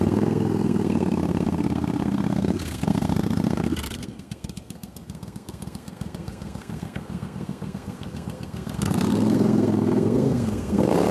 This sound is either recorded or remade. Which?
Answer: remade